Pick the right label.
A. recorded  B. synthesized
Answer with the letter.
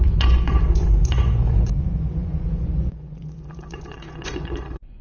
B